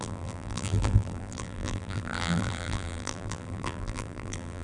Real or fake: fake